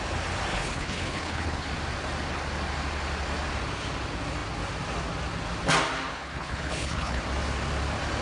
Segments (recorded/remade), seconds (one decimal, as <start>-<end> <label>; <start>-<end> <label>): 0.0-0.5 recorded; 0.5-1.7 remade; 1.7-6.1 recorded; 6.1-7.2 remade; 7.2-8.2 recorded